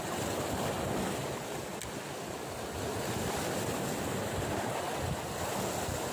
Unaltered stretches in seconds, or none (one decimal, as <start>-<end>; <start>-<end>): 0.0-6.1